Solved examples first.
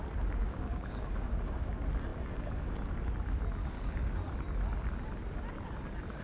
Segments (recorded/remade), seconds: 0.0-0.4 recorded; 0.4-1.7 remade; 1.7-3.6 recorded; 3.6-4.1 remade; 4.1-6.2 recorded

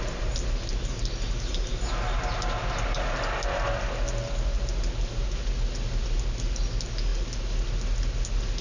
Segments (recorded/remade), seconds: 0.0-8.6 recorded

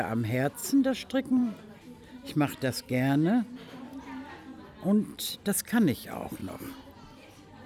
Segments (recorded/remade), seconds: 0.0-0.6 recorded; 0.6-1.6 remade; 1.6-6.4 recorded; 6.4-7.7 remade

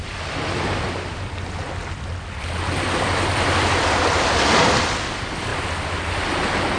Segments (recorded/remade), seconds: 0.0-6.8 recorded

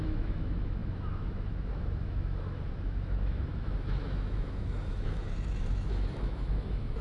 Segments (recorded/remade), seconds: 0.0-7.0 remade

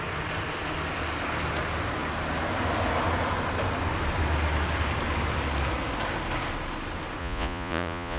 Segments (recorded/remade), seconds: 0.0-7.2 recorded; 7.2-8.2 remade